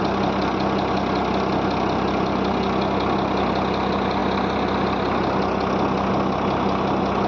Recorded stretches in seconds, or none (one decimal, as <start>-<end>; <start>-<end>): 0.0-7.3

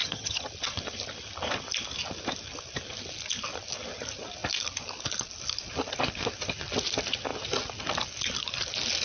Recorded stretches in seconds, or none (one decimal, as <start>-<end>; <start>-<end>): 0.5-9.0